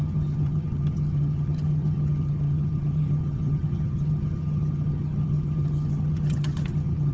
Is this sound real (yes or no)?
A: no